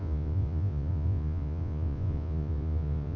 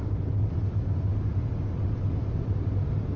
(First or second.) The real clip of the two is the second